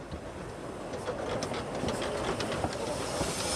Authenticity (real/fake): real